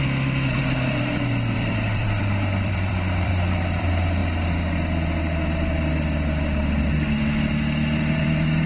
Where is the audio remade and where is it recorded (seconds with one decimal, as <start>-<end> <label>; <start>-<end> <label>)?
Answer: 0.0-0.6 recorded; 0.6-3.3 remade; 3.3-3.8 recorded; 3.8-4.2 remade; 4.2-8.2 recorded; 8.2-8.7 remade